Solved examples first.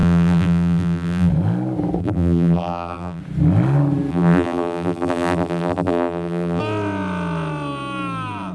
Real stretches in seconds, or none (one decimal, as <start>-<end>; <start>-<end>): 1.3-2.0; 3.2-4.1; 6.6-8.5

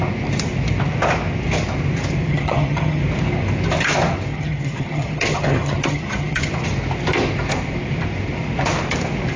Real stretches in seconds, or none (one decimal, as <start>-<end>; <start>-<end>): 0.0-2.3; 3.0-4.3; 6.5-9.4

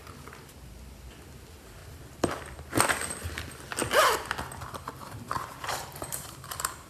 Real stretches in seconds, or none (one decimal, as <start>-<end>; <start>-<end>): 0.0-5.0

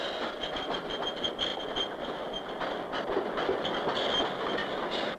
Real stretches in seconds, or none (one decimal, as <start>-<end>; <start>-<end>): 0.0-1.5; 2.1-5.2

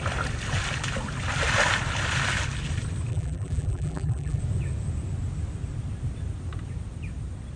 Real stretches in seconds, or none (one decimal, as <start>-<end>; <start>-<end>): 0.0-3.1; 4.4-7.6